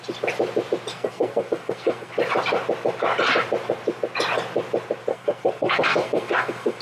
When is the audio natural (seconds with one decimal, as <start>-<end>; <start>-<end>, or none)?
0.0-0.9; 2.1-5.1